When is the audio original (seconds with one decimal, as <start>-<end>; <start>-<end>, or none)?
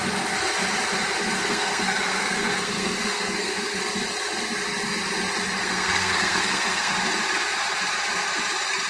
0.0-1.4; 3.8-5.6; 6.9-8.9